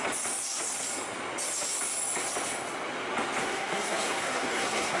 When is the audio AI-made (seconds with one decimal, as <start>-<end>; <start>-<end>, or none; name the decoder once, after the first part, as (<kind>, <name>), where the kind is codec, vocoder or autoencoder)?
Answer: 3.4-5.0 (codec, SNAC)